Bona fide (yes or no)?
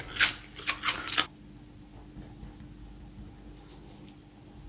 yes